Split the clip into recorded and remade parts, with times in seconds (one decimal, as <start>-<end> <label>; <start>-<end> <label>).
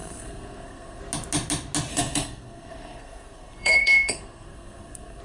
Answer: 0.0-1.0 remade; 1.0-1.9 recorded; 1.9-5.2 remade